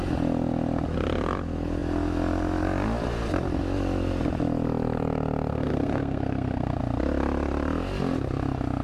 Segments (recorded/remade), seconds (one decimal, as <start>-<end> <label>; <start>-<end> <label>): 0.0-5.5 recorded; 5.5-6.8 remade; 6.8-8.8 recorded